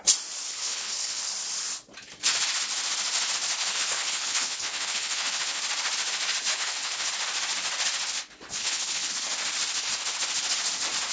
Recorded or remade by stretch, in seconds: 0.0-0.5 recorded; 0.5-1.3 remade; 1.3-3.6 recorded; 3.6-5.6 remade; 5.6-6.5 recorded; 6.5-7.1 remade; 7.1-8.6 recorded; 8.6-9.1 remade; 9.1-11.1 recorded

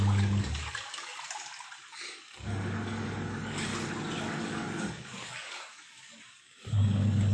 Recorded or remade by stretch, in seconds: 0.0-1.1 remade; 1.1-1.9 recorded; 1.9-3.7 remade; 3.7-4.4 recorded; 4.4-7.3 remade